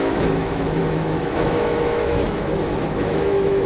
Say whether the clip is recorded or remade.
remade